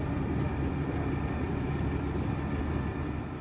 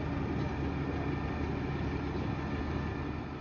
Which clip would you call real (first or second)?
second